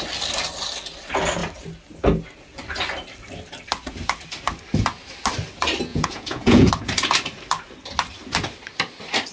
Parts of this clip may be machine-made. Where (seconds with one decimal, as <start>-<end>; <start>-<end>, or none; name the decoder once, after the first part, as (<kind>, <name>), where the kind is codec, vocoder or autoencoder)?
5.9-6.7 (vocoder, Vocos)